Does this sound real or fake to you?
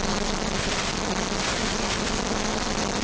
real